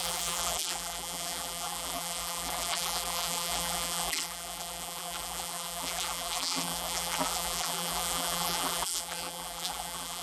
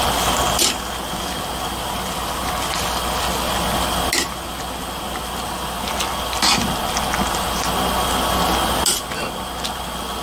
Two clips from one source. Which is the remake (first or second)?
first